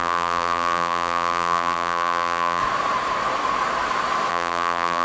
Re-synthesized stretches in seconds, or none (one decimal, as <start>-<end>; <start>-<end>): 0.0-2.6; 4.3-5.0